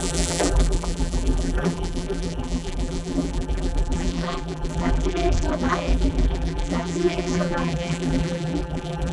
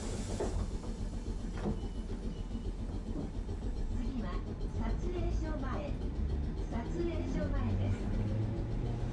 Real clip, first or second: second